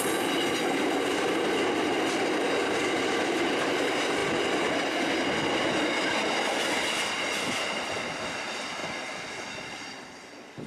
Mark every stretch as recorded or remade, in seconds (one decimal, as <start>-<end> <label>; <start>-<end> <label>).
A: 0.0-10.7 remade